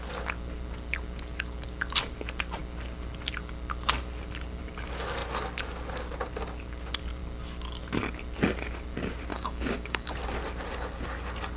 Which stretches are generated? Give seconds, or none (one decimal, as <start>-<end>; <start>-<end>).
9.3-10.1